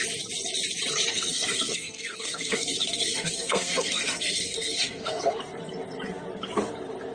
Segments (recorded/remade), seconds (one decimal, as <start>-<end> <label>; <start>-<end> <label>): 0.0-1.1 recorded; 1.1-5.4 remade; 5.4-7.1 recorded